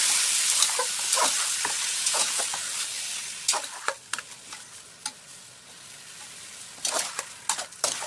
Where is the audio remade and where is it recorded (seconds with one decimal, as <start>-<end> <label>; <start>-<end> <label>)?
0.0-1.9 recorded; 1.9-2.4 remade; 2.4-8.1 recorded

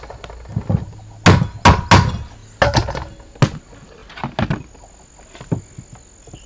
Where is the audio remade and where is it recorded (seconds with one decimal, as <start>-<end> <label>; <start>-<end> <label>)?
0.0-6.5 recorded

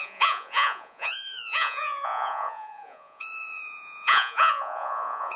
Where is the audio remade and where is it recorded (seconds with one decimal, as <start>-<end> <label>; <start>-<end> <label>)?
0.0-5.4 remade

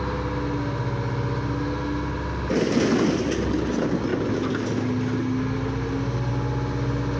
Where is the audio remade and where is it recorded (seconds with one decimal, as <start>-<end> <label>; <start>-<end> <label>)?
0.0-7.2 recorded

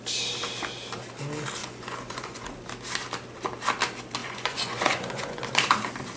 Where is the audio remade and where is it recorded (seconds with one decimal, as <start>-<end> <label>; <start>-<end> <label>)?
0.0-1.6 recorded; 1.6-2.5 remade; 2.5-4.2 recorded; 4.2-5.4 remade; 5.4-6.2 recorded

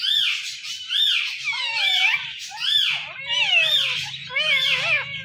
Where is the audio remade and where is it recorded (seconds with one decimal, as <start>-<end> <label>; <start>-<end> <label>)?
0.0-5.2 recorded

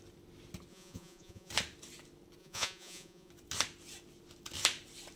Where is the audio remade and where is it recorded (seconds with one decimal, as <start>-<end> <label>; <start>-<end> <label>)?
0.0-0.7 recorded; 0.7-1.5 remade; 1.5-2.4 recorded; 2.4-3.3 remade; 3.3-5.2 recorded